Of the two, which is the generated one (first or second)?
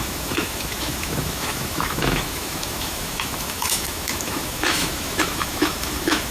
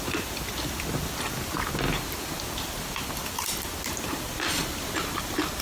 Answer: first